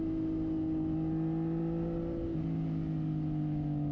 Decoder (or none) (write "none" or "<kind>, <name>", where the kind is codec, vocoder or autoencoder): none